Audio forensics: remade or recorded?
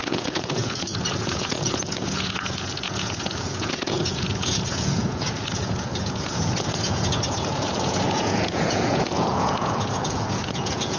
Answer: remade